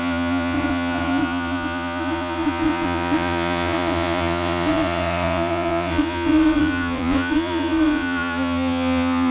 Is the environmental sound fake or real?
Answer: fake